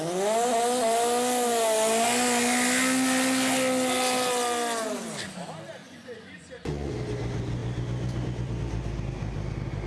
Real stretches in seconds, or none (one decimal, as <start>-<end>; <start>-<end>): 0.0-5.8; 6.9-9.9